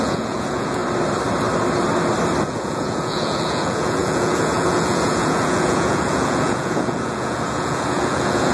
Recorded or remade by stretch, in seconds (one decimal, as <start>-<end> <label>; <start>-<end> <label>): 0.0-0.8 remade; 0.8-2.4 recorded; 2.4-8.5 remade